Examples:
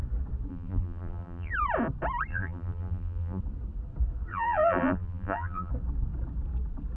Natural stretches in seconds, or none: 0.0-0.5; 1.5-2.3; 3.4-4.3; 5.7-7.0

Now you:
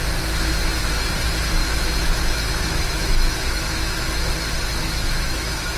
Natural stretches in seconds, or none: 0.0-1.6; 4.3-4.8

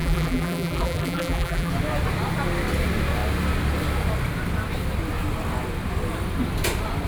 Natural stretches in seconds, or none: 1.7-7.1

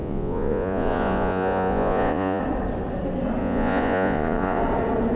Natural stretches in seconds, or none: 2.4-3.4; 4.6-5.2

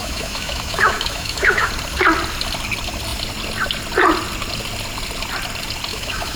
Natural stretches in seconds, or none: 1.7-5.9

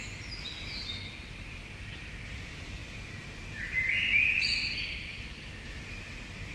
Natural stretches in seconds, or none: 4.5-5.0

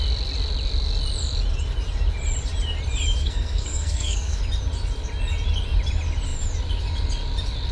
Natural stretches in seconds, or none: 0.0-3.2; 4.4-7.7